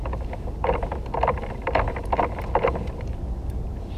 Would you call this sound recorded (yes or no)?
yes